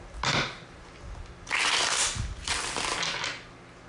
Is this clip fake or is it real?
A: real